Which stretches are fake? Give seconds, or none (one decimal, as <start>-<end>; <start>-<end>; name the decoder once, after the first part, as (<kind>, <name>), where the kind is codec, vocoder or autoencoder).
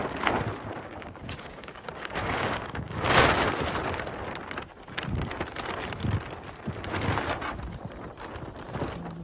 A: 0.7-3.2 (codec, DAC)